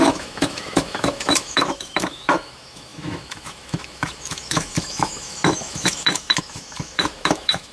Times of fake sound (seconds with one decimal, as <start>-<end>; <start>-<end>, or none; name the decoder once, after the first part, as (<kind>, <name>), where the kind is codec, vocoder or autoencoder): 0.0-7.7 (autoencoder, DAC-VAE)